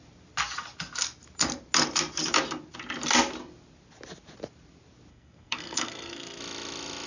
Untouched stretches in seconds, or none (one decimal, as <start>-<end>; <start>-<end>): 0.0-5.1; 6.4-7.1

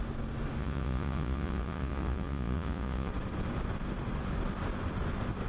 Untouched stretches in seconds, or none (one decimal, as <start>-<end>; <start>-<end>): 0.0-0.6; 3.1-5.5

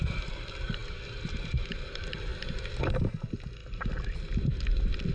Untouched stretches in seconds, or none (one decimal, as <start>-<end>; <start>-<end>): 3.6-4.5

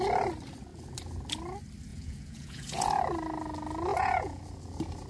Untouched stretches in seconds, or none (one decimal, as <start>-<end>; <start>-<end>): 0.0-1.9; 3.0-3.9; 4.4-5.1

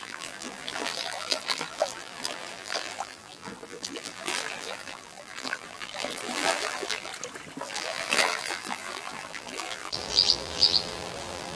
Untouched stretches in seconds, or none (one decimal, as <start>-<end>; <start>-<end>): 7.1-7.6

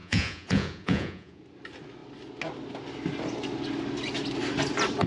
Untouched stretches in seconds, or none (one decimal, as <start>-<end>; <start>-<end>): 1.4-5.1

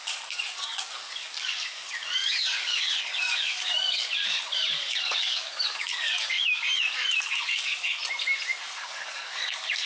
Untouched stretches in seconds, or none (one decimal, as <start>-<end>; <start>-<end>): 8.0-8.8